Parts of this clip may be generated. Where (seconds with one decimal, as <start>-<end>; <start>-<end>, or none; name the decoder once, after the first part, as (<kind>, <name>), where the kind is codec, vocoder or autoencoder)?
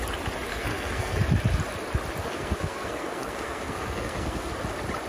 0.5-1.2 (codec, SNAC); 2.2-4.5